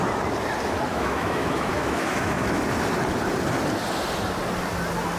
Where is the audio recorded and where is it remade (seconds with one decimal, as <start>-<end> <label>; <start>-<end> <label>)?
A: 0.0-0.9 recorded; 0.9-2.6 remade; 2.6-5.2 recorded